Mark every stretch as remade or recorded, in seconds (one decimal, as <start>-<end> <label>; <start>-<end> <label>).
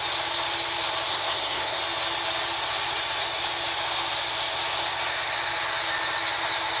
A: 0.0-1.1 recorded; 1.1-1.8 remade; 1.8-6.8 recorded